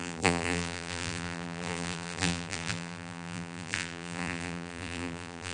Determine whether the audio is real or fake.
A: fake